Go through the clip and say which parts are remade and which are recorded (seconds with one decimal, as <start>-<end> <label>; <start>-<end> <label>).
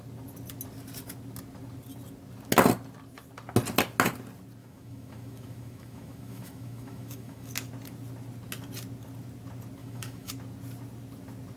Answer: 0.0-4.6 recorded; 4.6-7.5 remade; 7.5-9.8 recorded; 9.8-10.3 remade; 10.3-11.6 recorded